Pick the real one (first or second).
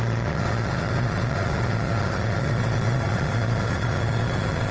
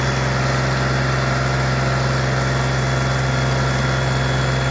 second